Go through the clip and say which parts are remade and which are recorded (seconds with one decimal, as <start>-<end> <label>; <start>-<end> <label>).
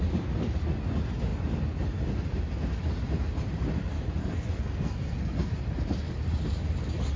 0.0-4.2 recorded; 4.2-5.5 remade; 5.5-7.2 recorded